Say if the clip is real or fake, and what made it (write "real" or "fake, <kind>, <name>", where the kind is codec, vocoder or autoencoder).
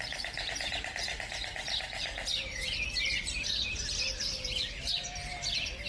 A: fake, vocoder, BigVGAN v2